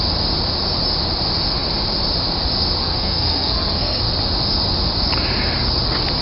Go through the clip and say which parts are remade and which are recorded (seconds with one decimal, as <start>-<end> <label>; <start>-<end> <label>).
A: 0.0-2.8 recorded; 2.8-4.0 remade; 4.0-6.2 recorded